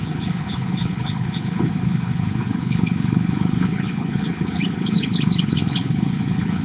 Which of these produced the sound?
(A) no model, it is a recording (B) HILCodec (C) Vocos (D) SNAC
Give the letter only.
B